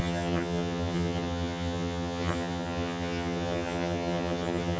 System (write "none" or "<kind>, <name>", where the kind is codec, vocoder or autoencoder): vocoder, HiFi-GAN